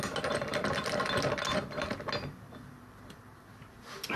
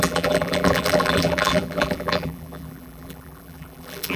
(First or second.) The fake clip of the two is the second